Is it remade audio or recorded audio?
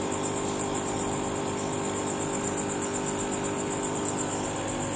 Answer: recorded